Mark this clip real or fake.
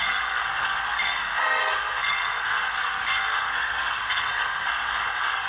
fake